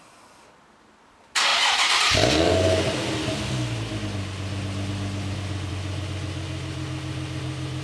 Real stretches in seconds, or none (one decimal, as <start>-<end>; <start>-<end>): 0.0-7.8